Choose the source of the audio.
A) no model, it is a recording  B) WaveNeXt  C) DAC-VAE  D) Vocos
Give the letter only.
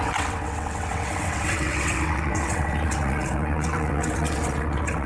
B